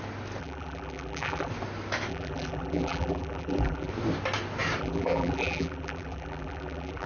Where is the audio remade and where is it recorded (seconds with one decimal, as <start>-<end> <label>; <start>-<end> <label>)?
0.0-0.4 recorded; 0.4-1.5 remade; 1.5-2.1 recorded; 2.1-3.9 remade; 3.9-4.8 recorded; 4.8-7.1 remade